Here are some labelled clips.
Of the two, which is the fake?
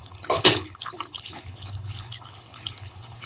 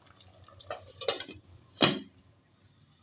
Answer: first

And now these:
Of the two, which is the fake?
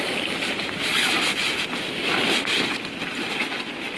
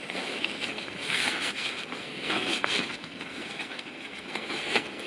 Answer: second